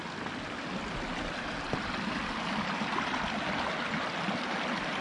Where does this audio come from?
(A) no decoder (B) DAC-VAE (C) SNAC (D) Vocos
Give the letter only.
A